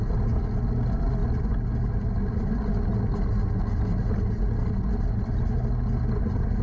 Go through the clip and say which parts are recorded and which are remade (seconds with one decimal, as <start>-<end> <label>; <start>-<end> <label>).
0.0-6.6 recorded

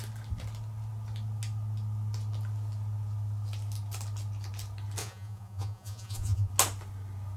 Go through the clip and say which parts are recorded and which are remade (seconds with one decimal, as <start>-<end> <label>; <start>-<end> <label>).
0.0-5.0 recorded; 5.0-6.5 remade; 6.5-7.4 recorded

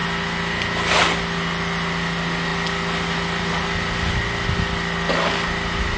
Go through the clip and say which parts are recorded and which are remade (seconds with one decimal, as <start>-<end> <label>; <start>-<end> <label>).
0.0-6.0 recorded

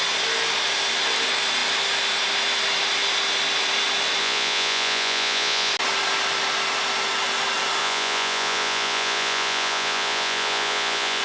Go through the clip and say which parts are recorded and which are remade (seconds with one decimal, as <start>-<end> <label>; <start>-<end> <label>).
0.0-4.2 recorded; 4.2-5.7 remade; 5.7-7.8 recorded; 7.8-11.2 remade